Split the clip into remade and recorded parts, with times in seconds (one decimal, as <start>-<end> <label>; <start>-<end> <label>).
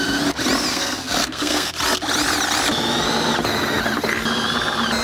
0.0-0.7 recorded; 0.7-1.7 remade; 1.7-5.0 recorded